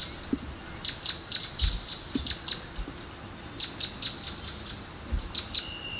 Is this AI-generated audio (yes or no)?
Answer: no